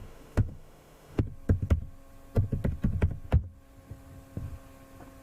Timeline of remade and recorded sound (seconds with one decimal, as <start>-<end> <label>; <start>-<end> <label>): 0.0-1.2 remade; 1.2-5.2 recorded

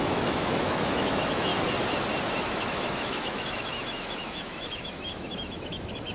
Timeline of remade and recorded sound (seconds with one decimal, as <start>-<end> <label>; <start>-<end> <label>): 0.0-1.5 remade; 1.5-2.4 recorded; 2.4-6.1 remade

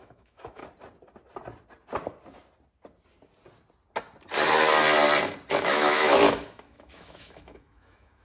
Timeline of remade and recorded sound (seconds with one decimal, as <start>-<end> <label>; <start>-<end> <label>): 0.0-0.6 remade; 0.6-5.5 recorded; 5.5-8.2 remade

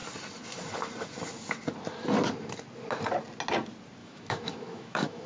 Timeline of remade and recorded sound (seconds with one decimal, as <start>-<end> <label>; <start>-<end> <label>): 0.0-4.0 recorded; 4.0-5.3 remade

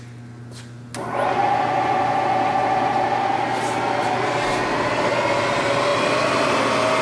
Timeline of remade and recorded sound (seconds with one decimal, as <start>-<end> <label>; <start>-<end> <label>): 0.0-7.0 recorded